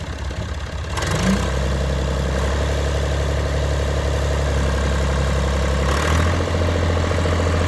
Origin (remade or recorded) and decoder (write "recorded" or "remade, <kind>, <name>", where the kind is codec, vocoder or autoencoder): recorded